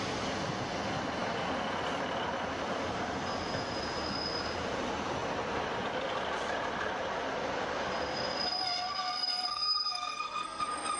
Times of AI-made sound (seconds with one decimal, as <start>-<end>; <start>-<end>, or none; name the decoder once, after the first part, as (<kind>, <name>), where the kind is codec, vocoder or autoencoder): 9.5-10.6 (codec, SNAC)